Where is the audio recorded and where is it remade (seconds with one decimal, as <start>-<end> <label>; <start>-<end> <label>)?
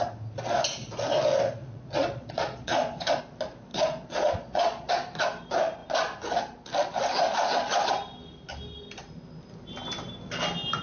0.0-1.6 recorded; 1.6-3.2 remade; 3.2-3.7 recorded; 3.7-4.9 remade; 4.9-10.8 recorded